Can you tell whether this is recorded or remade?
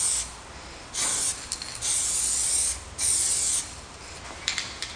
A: recorded